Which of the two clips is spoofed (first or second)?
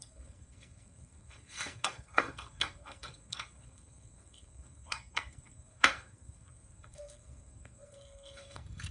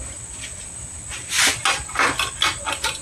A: first